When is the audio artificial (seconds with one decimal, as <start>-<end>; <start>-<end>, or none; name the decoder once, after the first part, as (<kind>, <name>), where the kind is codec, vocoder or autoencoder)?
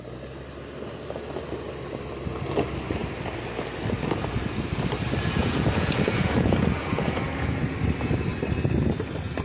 5.4-7.6 (vocoder, Vocos)